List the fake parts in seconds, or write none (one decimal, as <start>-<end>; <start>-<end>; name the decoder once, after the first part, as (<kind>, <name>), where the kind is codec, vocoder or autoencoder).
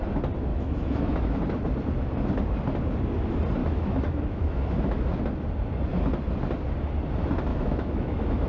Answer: 0.5-1.4 (autoencoder, DAC-VAE); 3.6-5.2; 7.5-8.5